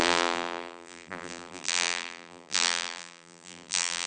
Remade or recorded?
remade